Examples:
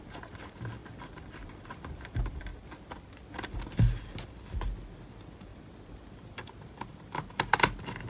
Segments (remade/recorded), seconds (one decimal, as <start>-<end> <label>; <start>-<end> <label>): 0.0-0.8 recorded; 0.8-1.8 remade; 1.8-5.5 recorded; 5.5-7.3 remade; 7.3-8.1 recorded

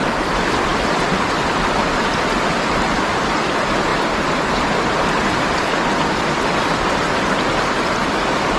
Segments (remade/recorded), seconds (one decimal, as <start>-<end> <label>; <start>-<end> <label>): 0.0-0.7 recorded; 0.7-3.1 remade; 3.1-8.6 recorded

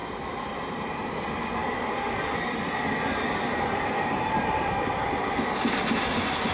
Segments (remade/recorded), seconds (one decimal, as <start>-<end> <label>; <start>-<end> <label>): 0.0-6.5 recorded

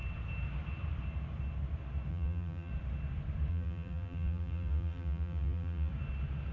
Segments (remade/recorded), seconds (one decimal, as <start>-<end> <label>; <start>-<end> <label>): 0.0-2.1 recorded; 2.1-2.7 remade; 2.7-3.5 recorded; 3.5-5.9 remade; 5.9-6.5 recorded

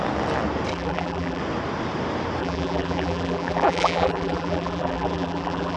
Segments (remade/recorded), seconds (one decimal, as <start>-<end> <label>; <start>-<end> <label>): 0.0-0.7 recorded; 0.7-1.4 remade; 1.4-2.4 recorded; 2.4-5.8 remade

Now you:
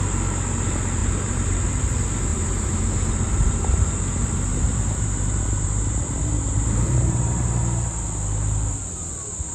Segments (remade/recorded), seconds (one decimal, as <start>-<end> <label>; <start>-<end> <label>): 0.0-1.0 recorded; 1.0-1.6 remade; 1.6-2.3 recorded; 2.3-7.6 remade; 7.6-9.5 recorded

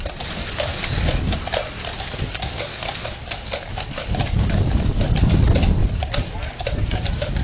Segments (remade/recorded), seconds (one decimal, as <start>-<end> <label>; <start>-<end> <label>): 0.0-0.7 remade; 0.7-1.2 recorded; 1.2-1.6 remade; 1.6-3.7 recorded; 3.7-5.8 remade; 5.8-6.6 recorded; 6.6-7.4 remade